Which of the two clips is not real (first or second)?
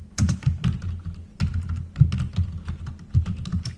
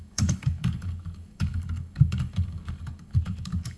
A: second